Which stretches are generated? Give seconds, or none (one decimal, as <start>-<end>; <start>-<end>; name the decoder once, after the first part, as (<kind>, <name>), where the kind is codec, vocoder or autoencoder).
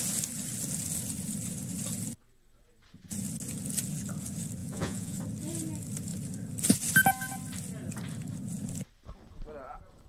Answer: 4.6-5.2 (vocoder, Vocos)